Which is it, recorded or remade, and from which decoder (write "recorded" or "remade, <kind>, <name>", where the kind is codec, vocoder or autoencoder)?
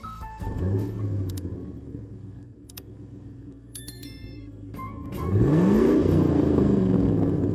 remade, codec, SNAC